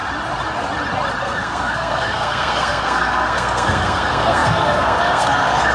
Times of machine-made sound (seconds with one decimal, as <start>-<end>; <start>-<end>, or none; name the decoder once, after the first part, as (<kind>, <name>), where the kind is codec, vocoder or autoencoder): 1.2-5.7 (codec, SNAC)